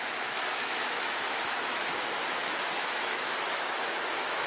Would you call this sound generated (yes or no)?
yes